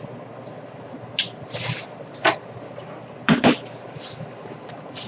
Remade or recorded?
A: recorded